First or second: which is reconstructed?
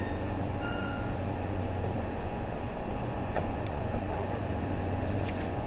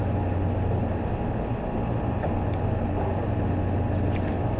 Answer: first